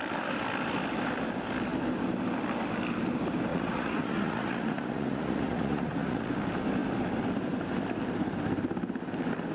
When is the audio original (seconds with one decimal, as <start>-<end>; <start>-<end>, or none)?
0.0-3.5; 6.3-9.5